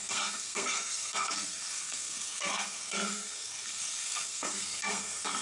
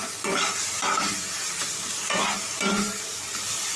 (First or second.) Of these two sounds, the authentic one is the second